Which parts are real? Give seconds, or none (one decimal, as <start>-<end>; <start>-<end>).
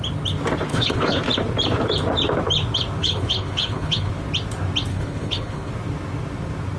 0.0-0.7; 1.2-3.0; 4.1-4.9; 5.7-6.8